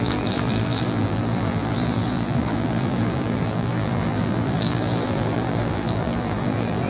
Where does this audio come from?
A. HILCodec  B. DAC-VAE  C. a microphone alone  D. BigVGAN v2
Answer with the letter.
D